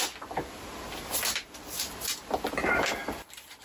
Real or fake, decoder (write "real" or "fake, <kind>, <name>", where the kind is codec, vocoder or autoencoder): real